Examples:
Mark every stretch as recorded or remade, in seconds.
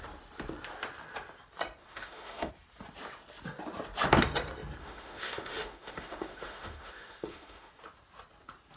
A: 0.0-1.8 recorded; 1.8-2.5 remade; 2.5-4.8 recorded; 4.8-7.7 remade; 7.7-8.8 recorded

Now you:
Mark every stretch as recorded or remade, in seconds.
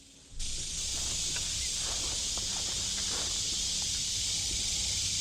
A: 0.0-5.2 recorded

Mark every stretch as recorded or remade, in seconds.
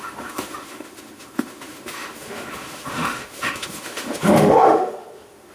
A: 0.0-5.5 remade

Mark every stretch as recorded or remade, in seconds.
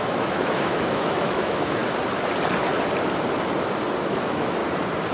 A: 0.0-1.8 remade; 1.8-4.0 recorded; 4.0-4.6 remade; 4.6-5.1 recorded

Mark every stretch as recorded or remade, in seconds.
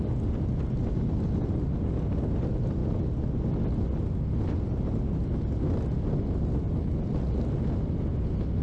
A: 0.0-8.6 recorded